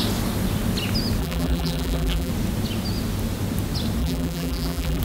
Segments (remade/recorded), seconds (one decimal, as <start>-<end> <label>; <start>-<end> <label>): 0.0-1.2 recorded; 1.2-2.3 remade; 2.3-4.0 recorded; 4.0-5.0 remade